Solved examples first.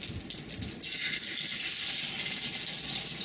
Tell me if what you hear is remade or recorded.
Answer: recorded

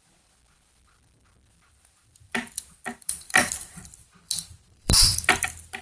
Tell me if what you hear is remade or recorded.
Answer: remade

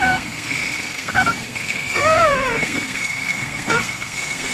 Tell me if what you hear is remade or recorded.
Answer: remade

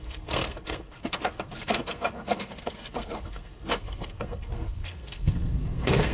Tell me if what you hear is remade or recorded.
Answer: remade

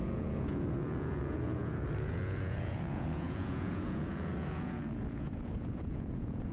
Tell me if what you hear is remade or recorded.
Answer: remade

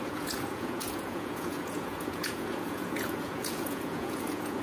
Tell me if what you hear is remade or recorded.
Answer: remade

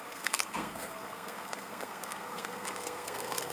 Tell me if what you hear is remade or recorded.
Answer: remade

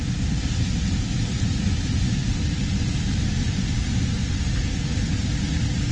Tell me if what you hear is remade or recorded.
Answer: recorded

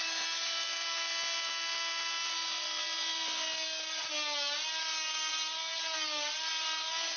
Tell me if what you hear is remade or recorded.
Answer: recorded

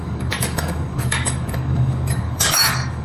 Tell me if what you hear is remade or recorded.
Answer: remade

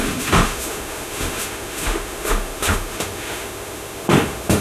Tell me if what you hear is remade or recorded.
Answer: remade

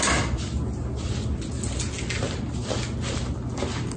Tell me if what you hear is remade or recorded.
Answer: recorded